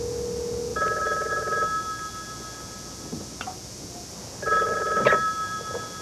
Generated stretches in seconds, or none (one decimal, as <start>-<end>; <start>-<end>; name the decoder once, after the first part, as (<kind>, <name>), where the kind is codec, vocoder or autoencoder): none